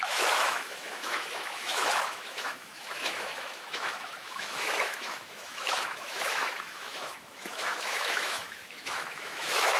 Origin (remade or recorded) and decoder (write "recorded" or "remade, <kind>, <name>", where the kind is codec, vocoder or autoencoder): remade, autoencoder, DAC-VAE